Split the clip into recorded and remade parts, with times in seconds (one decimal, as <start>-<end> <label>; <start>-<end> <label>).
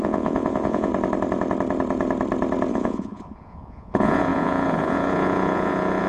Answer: 0.0-0.9 remade; 0.9-2.7 recorded; 2.7-6.1 remade